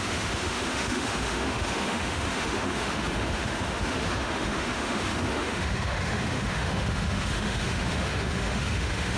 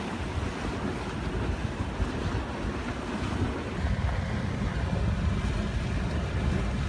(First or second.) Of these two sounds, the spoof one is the first